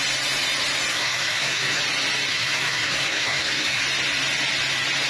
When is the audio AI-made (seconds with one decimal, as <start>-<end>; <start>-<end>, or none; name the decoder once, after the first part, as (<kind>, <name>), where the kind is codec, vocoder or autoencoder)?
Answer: 0.9-1.8 (codec, SNAC); 2.3-3.8